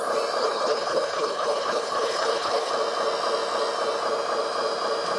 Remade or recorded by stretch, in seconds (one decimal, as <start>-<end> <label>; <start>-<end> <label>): 0.0-0.4 recorded; 0.4-2.7 remade; 2.7-5.2 recorded